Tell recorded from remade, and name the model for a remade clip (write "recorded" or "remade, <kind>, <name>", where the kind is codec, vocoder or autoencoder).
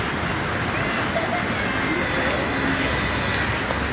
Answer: recorded